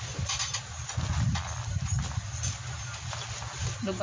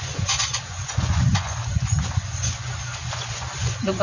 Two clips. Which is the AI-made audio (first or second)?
second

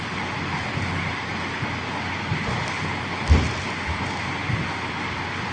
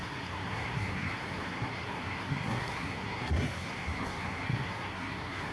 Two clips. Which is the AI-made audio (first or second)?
second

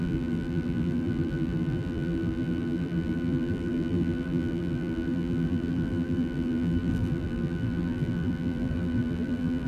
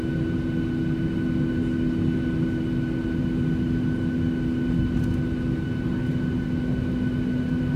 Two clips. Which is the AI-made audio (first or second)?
first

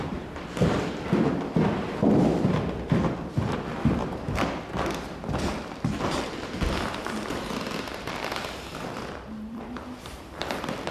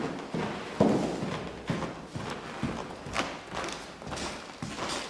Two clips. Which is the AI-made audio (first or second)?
first